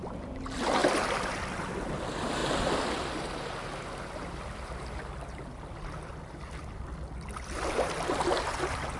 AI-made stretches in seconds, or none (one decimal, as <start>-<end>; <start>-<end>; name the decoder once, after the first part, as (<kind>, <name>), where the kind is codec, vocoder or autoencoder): none